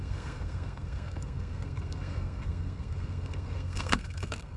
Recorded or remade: remade